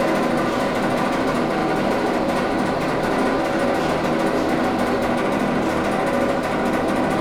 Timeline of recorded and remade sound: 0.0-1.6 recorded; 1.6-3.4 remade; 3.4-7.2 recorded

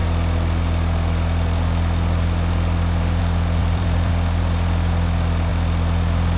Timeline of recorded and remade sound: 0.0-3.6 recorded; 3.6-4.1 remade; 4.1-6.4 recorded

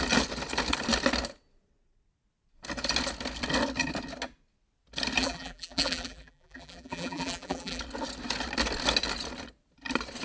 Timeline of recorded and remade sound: 0.0-5.2 recorded; 5.2-7.8 remade; 7.8-10.2 recorded

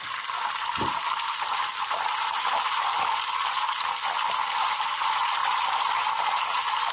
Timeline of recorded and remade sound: 0.0-2.9 remade; 2.9-4.5 recorded; 4.5-6.9 remade

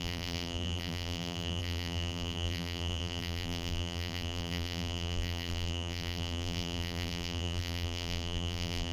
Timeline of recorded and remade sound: 0.0-8.9 remade